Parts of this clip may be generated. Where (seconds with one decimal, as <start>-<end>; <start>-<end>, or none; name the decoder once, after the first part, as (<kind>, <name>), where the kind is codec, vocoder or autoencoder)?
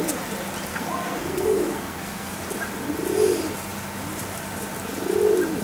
0.7-2.4 (codec, SNAC)